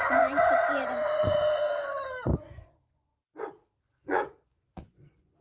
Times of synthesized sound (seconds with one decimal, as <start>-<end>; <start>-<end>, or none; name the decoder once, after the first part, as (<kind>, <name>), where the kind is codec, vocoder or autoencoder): 0.0-1.7 (vocoder, Vocos); 2.4-3.1; 3.8-5.4